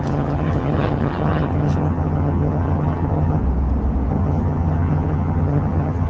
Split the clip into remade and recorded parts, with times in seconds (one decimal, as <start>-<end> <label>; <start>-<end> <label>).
0.0-3.4 remade; 3.4-4.1 recorded; 4.1-6.1 remade